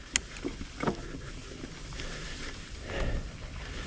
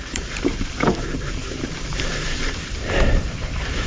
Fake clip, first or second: second